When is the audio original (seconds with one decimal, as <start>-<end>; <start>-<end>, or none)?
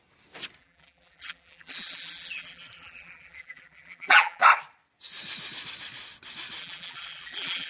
0.0-0.6; 4.4-6.6